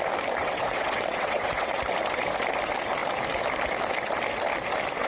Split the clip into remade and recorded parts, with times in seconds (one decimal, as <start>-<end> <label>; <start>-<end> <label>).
0.0-0.4 recorded; 0.4-1.8 remade; 1.8-5.1 recorded